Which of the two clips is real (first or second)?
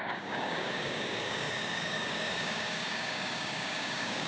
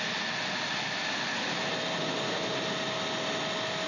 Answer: second